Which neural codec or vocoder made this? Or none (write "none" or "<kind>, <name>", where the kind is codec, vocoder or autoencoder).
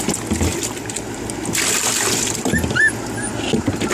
none